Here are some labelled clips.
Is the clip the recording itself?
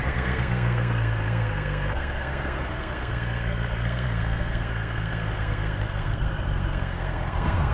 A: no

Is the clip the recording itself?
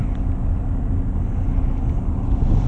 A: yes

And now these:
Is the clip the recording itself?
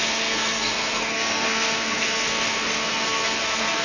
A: no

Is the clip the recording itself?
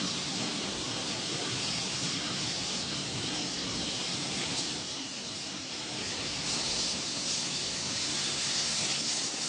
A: no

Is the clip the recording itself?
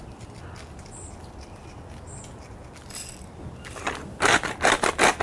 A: yes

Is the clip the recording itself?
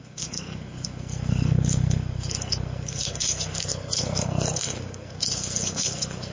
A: no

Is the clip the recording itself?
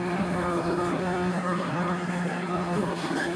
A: no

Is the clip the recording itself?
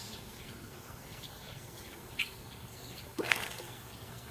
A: no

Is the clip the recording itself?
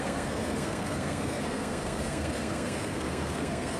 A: no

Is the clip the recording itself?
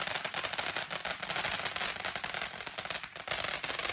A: yes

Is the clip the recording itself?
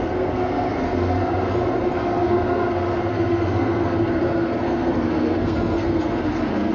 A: no